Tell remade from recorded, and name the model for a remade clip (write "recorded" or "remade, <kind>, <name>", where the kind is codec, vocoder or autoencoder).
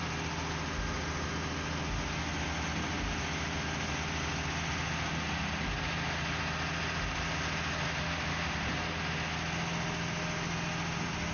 recorded